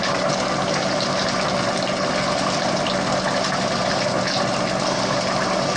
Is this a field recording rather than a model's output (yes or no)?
yes